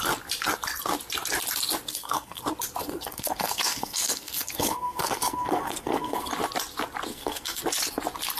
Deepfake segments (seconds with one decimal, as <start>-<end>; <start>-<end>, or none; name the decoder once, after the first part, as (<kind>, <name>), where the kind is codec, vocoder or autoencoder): 1.9-2.4 (codec, SNAC); 2.8-6.3; 7.1-7.6